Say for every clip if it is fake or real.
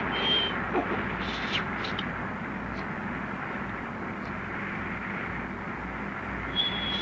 real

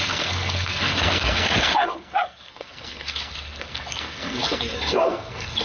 fake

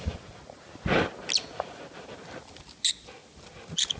real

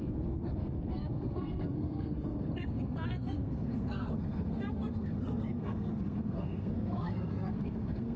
fake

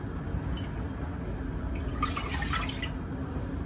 real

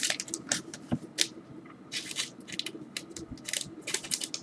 real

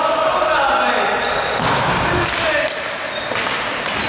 real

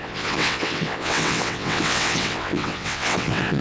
fake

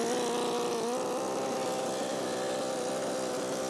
real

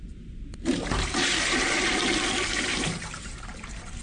fake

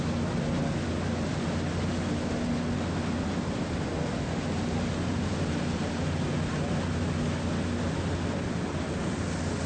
real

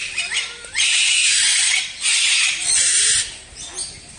real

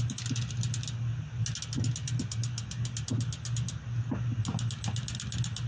real